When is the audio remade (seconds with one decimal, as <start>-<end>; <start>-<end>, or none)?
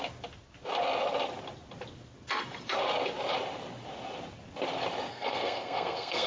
5.1-6.3